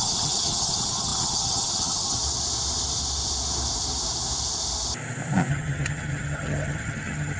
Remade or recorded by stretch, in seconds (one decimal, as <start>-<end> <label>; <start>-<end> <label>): 0.0-2.2 remade; 2.2-5.5 recorded; 5.5-7.4 remade